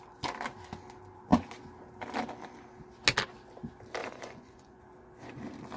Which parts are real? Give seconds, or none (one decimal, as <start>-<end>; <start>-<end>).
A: 0.0-4.0; 4.8-5.8